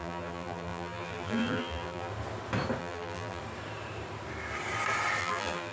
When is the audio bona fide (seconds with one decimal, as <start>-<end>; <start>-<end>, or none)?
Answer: 2.1-2.8; 3.4-5.2